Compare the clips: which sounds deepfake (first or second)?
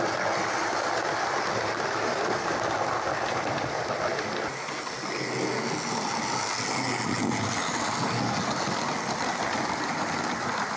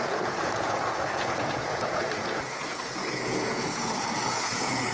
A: second